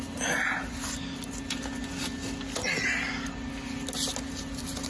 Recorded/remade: recorded